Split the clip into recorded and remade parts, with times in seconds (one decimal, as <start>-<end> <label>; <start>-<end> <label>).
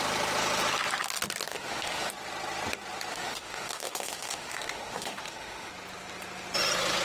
0.0-1.5 recorded; 1.5-2.1 remade; 2.1-3.1 recorded; 3.1-5.7 remade; 5.7-7.0 recorded